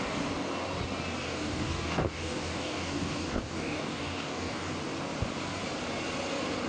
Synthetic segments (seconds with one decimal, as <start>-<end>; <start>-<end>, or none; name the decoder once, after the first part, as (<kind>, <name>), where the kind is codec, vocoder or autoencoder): 1.2-4.7 (codec, DAC)

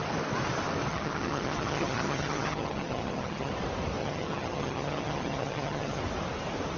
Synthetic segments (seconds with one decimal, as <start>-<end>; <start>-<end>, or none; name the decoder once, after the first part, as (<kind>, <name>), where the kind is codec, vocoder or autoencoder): 0.9-3.5 (vocoder, HiFi-GAN); 4.0-6.0

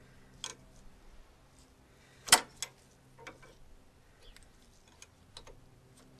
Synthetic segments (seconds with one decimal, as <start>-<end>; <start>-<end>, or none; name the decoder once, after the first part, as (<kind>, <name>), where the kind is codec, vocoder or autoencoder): none

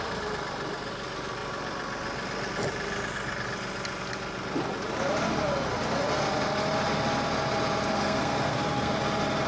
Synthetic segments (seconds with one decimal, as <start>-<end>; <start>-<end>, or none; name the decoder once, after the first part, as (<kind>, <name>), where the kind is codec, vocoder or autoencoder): 7.9-8.9 (codec, SNAC)